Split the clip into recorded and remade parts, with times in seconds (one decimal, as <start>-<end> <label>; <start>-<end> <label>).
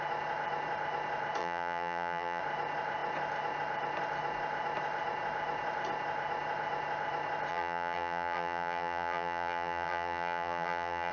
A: 0.0-1.4 recorded; 1.4-2.4 remade; 2.4-7.5 recorded; 7.5-11.1 remade